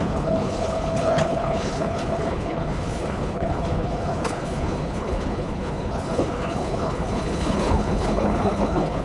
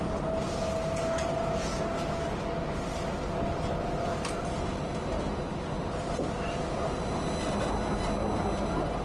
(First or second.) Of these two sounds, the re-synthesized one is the first